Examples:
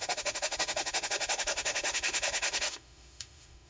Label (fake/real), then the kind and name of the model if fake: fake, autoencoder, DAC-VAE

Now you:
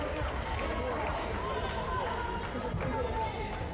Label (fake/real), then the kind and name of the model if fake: real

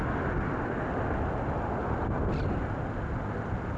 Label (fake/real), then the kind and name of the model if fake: real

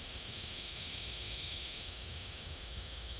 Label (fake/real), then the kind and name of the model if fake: fake, autoencoder, DAC-VAE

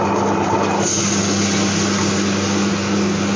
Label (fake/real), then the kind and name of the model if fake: real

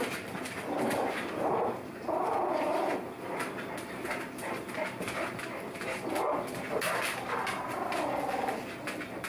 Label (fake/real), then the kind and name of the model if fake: real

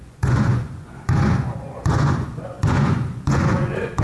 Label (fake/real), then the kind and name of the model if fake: fake, vocoder, Vocos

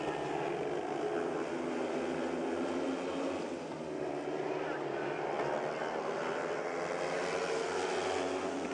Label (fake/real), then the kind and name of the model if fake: real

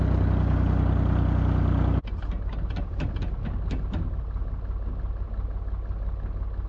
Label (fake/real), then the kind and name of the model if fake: real